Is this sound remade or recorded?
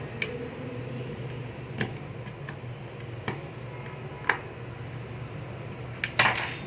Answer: recorded